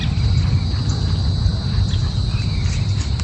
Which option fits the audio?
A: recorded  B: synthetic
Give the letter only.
A